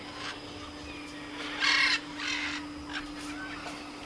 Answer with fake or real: real